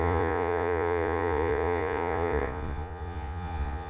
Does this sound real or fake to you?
fake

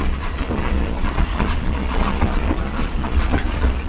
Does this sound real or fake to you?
fake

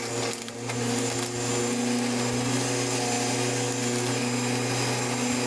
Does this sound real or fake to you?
real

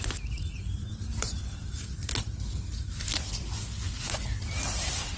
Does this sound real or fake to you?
real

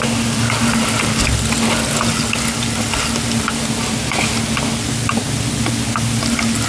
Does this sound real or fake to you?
real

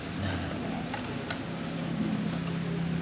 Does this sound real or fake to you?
real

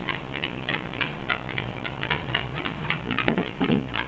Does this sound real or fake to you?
fake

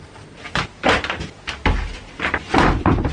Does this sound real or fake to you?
real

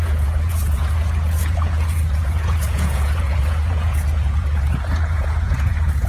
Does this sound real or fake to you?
fake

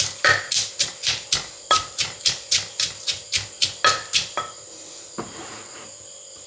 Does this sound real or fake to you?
real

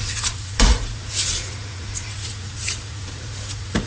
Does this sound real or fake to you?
fake